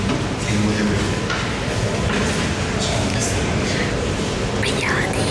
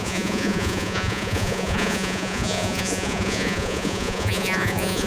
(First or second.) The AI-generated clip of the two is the second